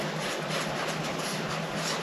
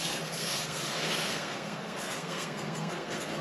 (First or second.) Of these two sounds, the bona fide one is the first